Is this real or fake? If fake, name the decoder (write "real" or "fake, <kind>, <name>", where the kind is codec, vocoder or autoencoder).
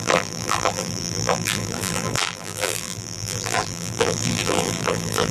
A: fake, vocoder, BigVGAN v2